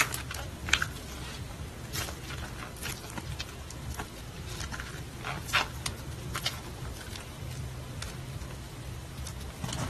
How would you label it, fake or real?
real